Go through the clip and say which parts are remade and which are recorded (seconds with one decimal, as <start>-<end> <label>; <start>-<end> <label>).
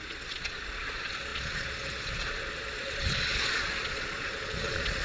0.0-5.0 remade